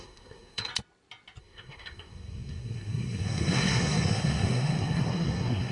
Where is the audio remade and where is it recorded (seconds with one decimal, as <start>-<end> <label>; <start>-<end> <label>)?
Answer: 0.0-0.7 remade; 0.7-1.4 recorded; 1.4-5.7 remade